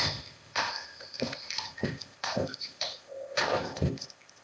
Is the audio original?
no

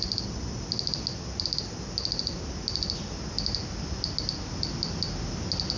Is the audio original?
yes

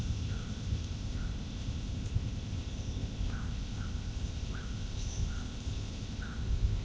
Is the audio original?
no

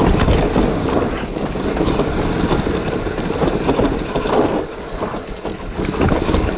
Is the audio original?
yes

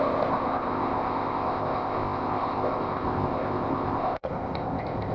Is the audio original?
no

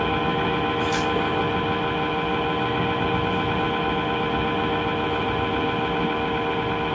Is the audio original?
yes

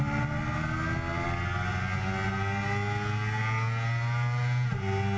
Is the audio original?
yes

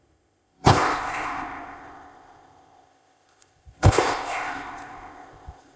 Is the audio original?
no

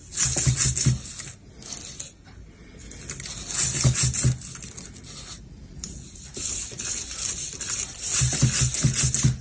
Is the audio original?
yes